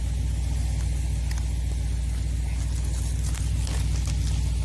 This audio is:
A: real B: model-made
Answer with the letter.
A